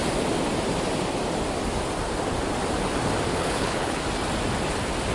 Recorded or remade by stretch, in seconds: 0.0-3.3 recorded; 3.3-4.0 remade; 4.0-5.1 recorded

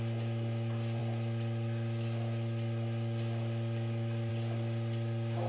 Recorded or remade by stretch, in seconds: 0.0-5.5 recorded

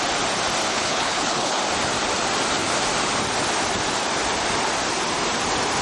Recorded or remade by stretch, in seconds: 0.0-0.7 recorded; 0.7-1.6 remade; 1.6-5.8 recorded